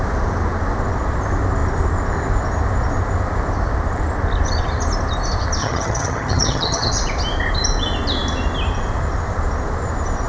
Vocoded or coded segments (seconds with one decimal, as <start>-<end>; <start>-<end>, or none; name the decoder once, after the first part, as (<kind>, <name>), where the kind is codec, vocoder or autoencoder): 5.6-6.9 (vocoder, HiFi-GAN)